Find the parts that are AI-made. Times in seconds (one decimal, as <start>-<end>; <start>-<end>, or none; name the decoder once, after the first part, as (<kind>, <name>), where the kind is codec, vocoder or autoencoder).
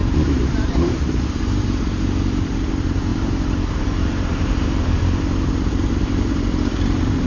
0.0-2.7 (vocoder, BigVGAN v2); 3.1-7.3